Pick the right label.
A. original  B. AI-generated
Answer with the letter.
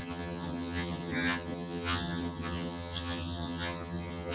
B